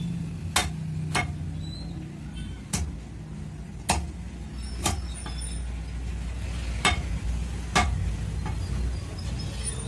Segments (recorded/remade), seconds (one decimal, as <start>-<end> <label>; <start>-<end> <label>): 0.0-9.9 recorded